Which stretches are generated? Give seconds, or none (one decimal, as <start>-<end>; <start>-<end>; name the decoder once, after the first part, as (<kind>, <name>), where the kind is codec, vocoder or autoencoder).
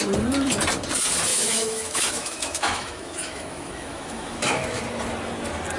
1.3-4.8 (autoencoder, DAC-VAE)